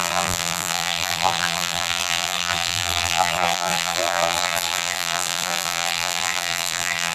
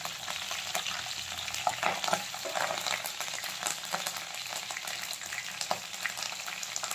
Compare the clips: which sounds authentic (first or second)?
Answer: second